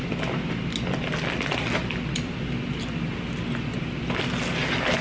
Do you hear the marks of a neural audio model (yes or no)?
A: no